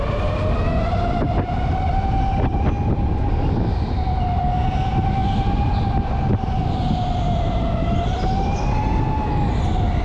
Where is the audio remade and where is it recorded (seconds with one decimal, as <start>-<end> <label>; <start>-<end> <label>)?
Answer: 0.0-10.0 recorded

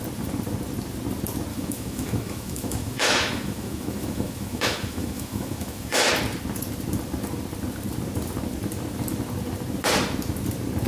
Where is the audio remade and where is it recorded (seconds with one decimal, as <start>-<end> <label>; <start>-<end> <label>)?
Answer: 0.0-1.5 recorded; 1.5-6.1 remade; 6.1-10.9 recorded

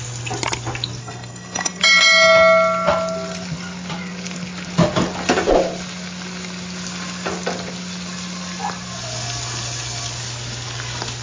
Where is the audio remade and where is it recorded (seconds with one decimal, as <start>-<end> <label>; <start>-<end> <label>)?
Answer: 0.0-1.0 recorded; 1.0-1.8 remade; 1.8-11.2 recorded

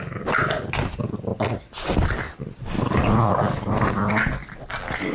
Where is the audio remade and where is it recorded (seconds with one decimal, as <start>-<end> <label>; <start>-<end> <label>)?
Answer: 0.0-5.1 recorded

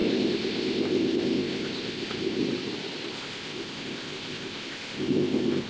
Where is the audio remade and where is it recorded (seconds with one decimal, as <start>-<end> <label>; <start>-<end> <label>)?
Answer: 0.0-2.4 remade; 2.4-3.1 recorded; 3.1-5.7 remade